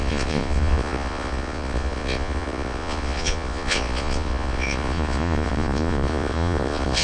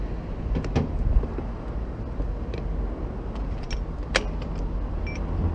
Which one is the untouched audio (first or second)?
second